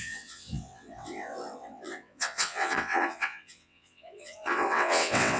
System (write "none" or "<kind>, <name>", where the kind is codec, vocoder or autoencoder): vocoder, WaveNeXt